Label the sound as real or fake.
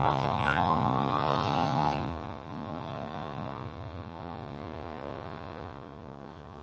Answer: fake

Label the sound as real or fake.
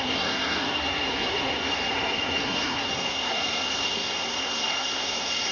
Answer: fake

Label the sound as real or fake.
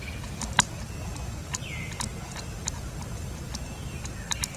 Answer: real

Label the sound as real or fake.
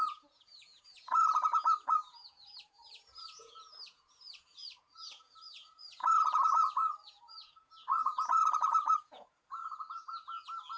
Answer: fake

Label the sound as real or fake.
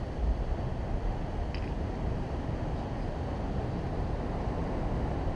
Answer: real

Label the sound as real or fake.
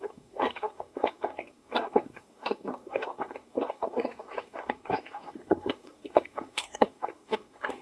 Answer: fake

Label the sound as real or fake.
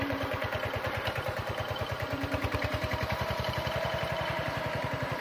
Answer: fake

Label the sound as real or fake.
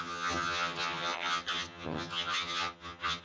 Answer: fake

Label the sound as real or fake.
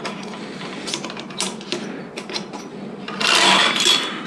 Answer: real